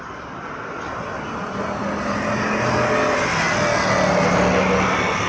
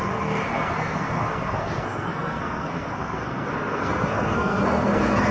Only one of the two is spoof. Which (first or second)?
second